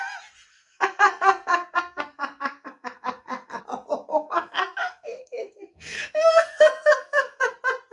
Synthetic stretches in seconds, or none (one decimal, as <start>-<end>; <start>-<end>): 0.5-3.6; 4.1-7.5